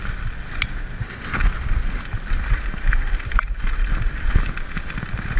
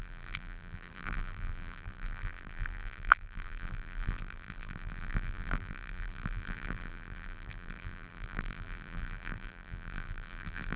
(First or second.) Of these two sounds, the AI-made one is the second